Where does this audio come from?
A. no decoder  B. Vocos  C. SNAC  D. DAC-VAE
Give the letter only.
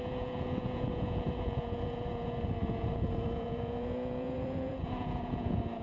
B